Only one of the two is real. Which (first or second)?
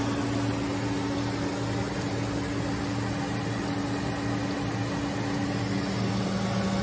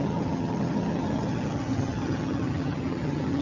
first